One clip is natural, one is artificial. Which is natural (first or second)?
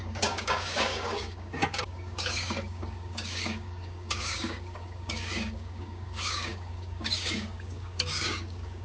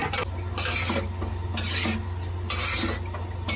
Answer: second